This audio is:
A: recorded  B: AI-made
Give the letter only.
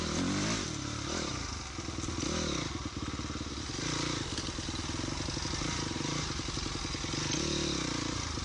A